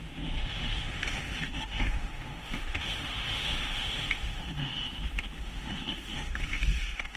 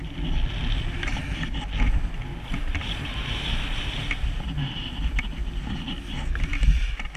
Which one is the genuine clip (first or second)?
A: second